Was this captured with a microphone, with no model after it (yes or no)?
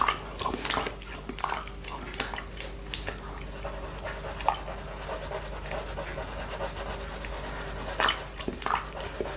yes